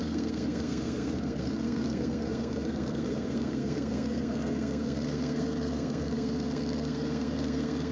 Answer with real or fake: fake